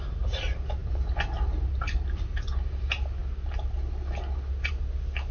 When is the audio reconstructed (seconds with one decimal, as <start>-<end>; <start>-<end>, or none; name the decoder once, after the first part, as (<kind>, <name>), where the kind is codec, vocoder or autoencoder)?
none